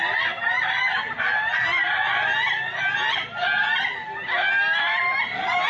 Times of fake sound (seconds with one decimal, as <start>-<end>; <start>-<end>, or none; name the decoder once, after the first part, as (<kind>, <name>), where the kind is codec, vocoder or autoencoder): none